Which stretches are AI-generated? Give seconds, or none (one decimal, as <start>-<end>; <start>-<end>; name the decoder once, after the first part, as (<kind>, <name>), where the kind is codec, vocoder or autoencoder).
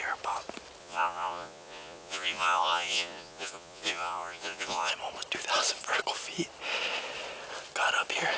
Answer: 0.8-4.9 (vocoder, Vocos)